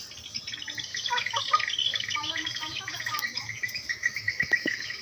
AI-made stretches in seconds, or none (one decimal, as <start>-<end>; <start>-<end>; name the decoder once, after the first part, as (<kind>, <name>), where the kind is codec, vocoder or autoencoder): 0.9-1.4 (autoencoder, DAC-VAE); 1.9-5.0